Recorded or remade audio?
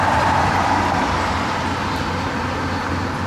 remade